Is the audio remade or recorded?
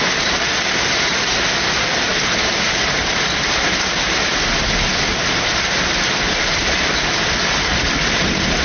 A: recorded